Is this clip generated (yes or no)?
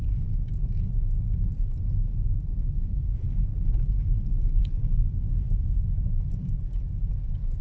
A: no